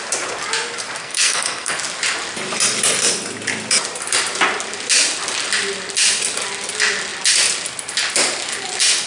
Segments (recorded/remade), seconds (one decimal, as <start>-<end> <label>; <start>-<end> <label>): 0.0-1.0 recorded; 1.0-1.8 remade; 1.8-9.1 recorded